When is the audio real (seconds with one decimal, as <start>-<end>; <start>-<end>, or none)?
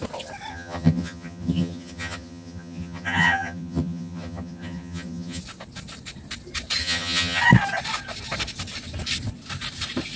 0.0-0.5; 5.4-6.8; 7.4-10.2